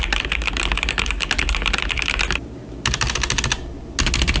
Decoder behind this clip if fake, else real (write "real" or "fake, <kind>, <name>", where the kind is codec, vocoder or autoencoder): real